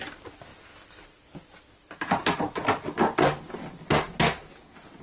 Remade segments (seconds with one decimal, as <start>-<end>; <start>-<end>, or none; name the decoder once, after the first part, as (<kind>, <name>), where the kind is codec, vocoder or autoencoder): none